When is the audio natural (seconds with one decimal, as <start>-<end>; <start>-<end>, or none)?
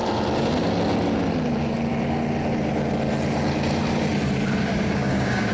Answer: 0.0-4.7